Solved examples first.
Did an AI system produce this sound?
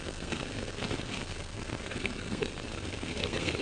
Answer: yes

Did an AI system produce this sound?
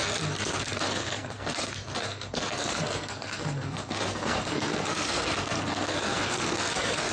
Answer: yes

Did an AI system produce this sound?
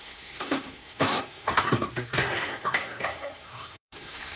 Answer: yes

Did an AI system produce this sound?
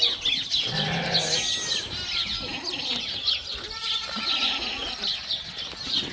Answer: no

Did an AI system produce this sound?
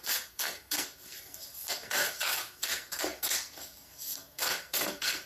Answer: yes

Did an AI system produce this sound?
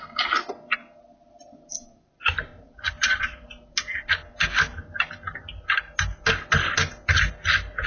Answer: no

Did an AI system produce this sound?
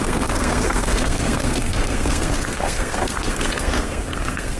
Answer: yes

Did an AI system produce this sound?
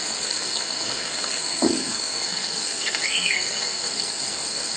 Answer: yes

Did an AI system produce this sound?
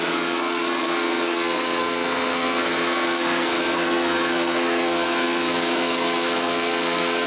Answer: yes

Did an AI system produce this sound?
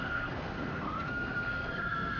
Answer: yes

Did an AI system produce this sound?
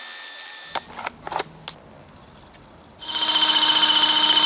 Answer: no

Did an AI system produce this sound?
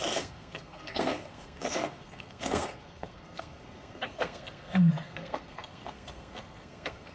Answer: yes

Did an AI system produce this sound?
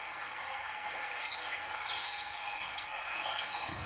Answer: yes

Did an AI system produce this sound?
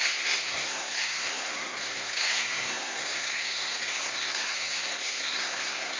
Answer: yes